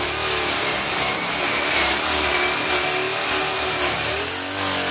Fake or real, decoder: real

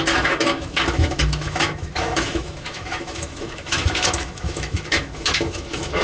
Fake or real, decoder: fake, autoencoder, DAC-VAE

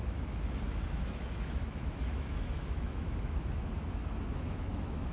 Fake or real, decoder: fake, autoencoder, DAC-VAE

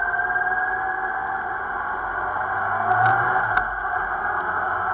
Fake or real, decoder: real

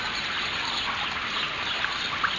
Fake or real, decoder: real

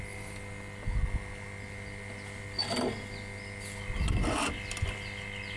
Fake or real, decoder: real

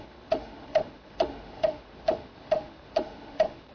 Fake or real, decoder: fake, autoencoder, DAC-VAE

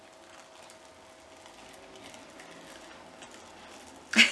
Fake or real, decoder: real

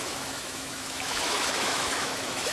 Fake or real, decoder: fake, autoencoder, DAC-VAE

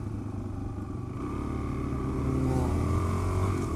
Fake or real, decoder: real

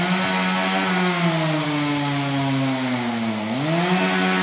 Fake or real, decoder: real